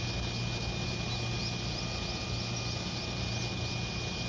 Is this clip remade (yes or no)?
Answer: no